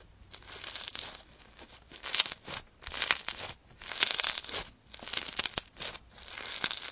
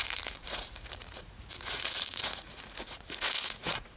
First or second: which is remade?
second